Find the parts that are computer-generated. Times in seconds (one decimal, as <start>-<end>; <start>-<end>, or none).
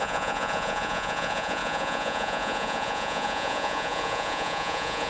0.0-5.1